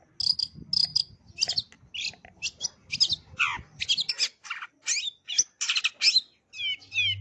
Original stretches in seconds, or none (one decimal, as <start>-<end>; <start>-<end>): 0.0-7.2